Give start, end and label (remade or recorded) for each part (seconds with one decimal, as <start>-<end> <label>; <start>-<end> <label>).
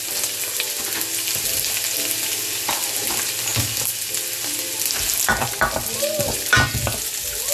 0.0-7.5 recorded